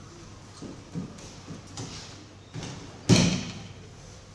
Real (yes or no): yes